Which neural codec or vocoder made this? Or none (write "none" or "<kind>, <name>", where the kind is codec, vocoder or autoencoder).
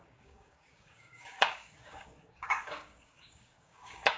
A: codec, DAC